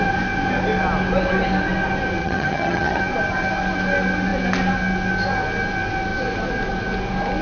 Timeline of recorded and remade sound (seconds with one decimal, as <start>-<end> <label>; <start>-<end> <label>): 0.0-2.2 recorded; 2.2-3.0 remade; 3.0-7.4 recorded